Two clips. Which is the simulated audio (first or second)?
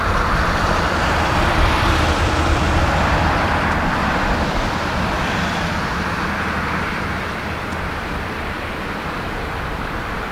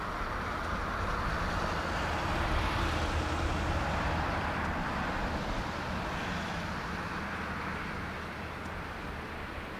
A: first